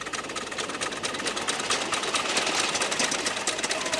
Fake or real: real